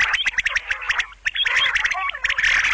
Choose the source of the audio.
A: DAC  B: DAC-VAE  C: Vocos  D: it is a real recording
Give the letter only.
D